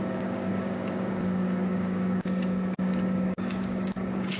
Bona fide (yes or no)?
no